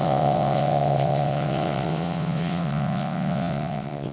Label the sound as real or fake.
fake